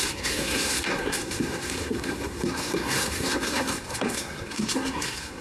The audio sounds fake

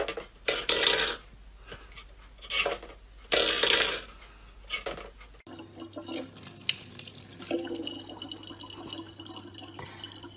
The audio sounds real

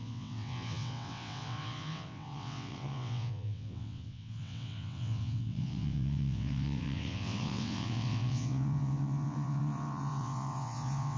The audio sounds fake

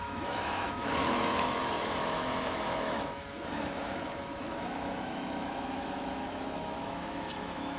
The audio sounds fake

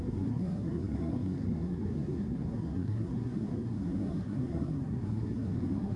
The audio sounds fake